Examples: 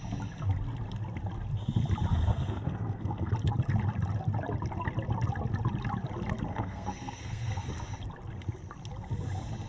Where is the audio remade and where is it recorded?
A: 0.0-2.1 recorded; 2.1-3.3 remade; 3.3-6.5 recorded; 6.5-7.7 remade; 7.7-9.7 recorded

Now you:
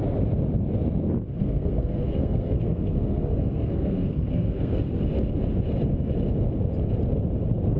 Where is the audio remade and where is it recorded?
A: 0.0-1.4 recorded; 1.4-5.0 remade; 5.0-7.8 recorded

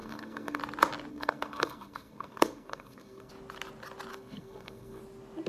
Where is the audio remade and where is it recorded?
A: 0.0-0.6 remade; 0.6-1.1 recorded; 1.1-3.3 remade; 3.3-4.1 recorded; 4.1-5.0 remade; 5.0-5.5 recorded